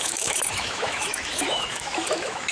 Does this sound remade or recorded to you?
remade